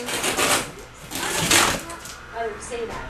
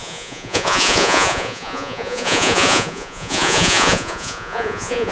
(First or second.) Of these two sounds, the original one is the first